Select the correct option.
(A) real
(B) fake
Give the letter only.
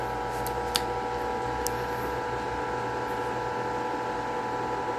A